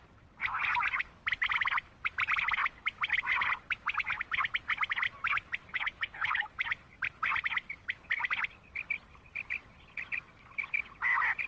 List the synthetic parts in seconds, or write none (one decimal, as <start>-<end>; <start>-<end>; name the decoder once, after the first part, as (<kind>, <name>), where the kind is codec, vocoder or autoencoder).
5.7-6.5 (codec, HILCodec)